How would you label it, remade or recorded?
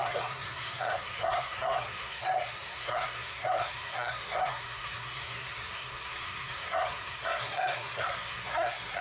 remade